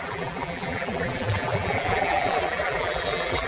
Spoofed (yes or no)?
yes